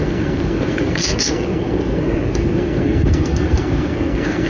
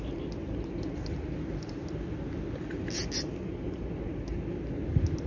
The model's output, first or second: first